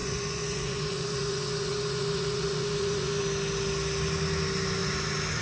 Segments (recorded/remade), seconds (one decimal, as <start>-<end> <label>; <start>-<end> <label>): 0.0-3.2 remade; 3.2-5.4 recorded